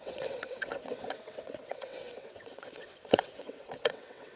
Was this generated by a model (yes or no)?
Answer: yes